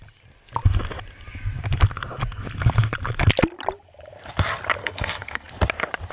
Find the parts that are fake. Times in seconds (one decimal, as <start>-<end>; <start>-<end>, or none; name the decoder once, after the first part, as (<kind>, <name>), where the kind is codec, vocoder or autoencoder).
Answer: 4.8-5.5 (codec, SNAC)